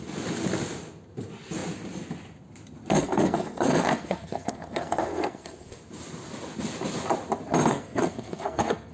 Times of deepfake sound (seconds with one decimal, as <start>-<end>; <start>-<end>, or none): 2.9-5.8; 7.7-8.9